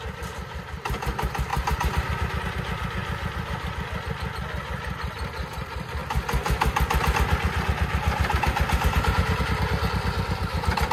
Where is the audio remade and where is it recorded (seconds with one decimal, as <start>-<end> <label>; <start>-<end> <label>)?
0.0-10.9 recorded